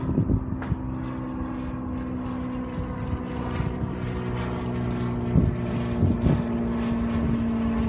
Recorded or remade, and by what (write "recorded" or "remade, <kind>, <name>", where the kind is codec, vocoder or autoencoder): recorded